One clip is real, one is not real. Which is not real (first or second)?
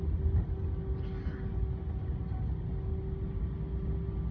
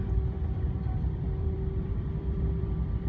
second